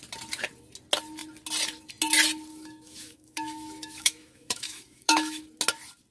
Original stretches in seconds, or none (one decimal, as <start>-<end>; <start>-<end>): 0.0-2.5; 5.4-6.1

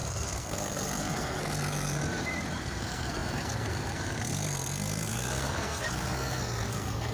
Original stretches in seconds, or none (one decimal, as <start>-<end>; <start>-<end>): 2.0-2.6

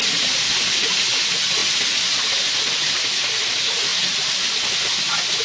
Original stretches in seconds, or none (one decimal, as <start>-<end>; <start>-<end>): 0.0-5.4

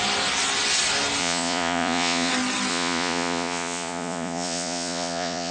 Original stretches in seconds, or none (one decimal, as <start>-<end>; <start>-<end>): 0.0-1.2; 2.3-2.7

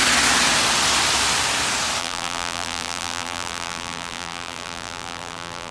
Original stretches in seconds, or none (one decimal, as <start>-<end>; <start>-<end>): 0.0-2.0

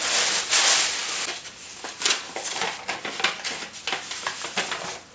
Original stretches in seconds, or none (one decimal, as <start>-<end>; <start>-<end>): 0.0-5.1

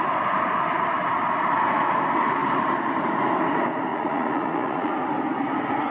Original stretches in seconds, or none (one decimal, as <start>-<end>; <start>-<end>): 0.0-3.9; 4.9-5.9

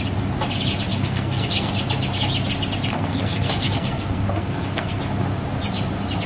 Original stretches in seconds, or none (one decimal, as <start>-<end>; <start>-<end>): 0.0-0.9; 1.7-2.9; 5.0-6.3